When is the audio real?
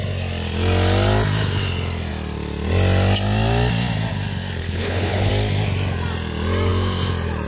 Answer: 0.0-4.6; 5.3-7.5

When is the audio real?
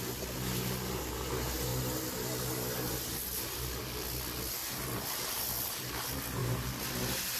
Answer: 0.0-7.4